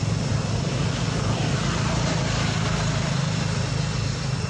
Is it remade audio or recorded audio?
recorded